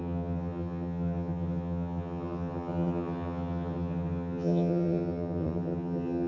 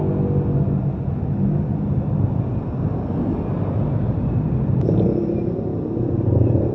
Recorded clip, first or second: second